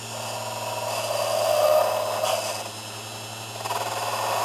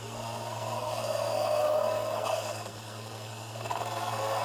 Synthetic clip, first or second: second